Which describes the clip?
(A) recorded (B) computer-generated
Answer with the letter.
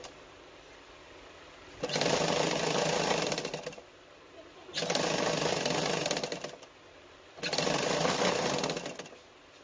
A